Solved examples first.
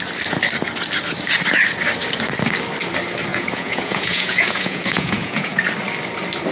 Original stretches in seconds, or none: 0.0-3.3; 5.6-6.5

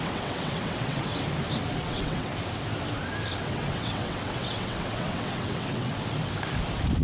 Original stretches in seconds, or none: 1.1-1.8; 2.3-3.4; 5.9-7.0

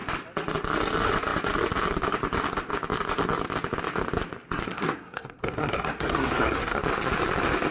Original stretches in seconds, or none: 0.0-4.6; 6.8-7.7

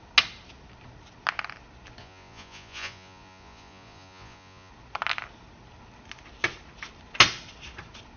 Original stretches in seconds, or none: 0.0-2.0; 4.7-8.2

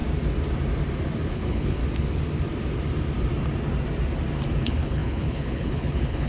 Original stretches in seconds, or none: 0.0-1.3; 1.8-4.6